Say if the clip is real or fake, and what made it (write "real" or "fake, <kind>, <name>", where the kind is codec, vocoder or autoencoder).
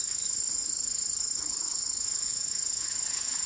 fake, autoencoder, DAC-VAE